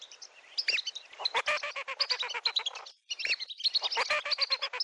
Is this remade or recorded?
recorded